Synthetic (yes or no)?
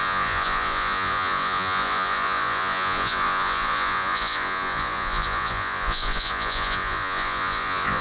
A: yes